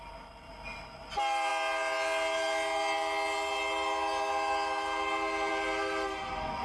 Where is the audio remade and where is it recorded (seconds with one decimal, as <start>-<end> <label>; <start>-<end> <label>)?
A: 0.0-6.6 recorded